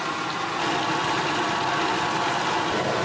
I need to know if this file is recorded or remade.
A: recorded